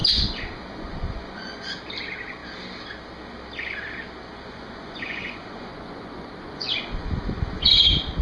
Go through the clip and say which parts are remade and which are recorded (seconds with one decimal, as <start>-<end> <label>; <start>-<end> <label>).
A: 0.0-1.8 remade; 1.8-4.3 recorded; 4.3-7.7 remade; 7.7-8.2 recorded